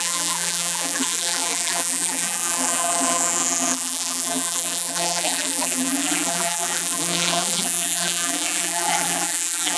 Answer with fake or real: fake